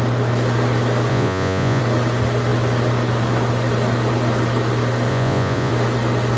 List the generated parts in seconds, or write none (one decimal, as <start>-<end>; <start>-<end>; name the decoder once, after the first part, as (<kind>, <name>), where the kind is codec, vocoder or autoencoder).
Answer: 1.1-1.8 (vocoder, Vocos); 5.1-5.7